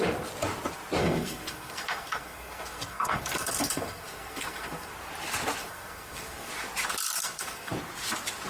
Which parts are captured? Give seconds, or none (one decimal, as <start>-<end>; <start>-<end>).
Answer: 0.0-1.0; 4.9-5.6; 6.5-7.2; 7.7-8.5